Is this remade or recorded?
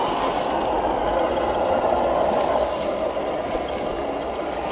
recorded